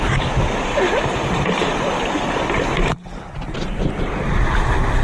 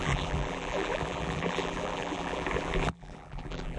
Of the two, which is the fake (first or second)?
second